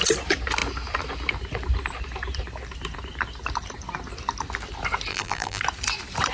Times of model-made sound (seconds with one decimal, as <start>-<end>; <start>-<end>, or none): 5.1-5.6